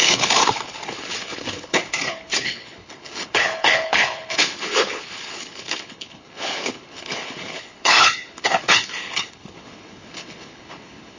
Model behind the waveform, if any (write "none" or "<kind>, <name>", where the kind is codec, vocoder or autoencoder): codec, HILCodec